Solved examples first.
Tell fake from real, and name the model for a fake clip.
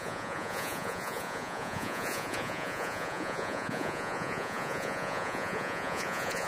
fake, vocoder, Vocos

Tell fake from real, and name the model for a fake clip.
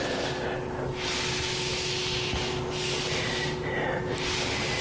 real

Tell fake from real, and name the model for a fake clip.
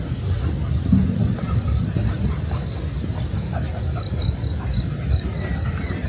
real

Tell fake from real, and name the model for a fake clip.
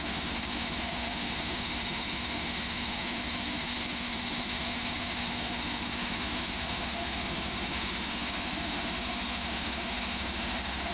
fake, autoencoder, DAC-VAE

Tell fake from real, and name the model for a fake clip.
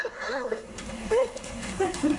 fake, codec, SNAC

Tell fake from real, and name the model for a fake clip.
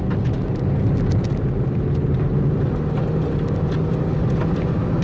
real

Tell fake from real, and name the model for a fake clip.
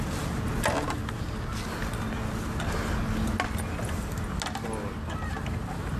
real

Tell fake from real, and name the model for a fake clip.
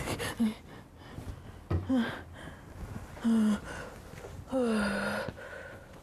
real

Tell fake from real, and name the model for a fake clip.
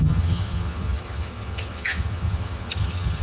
fake, vocoder, HiFi-GAN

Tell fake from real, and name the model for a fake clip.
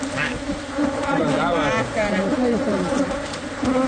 fake, vocoder, BigVGAN v2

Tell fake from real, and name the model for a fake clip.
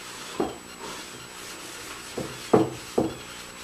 real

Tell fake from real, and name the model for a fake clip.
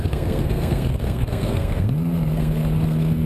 fake, codec, SNAC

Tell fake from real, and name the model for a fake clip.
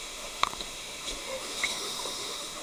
fake, autoencoder, DAC-VAE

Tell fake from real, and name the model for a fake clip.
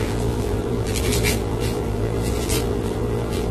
fake, vocoder, BigVGAN v2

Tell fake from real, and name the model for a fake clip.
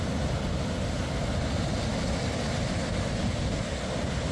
real